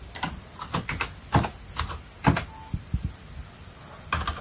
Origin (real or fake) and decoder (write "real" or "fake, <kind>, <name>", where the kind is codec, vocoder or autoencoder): real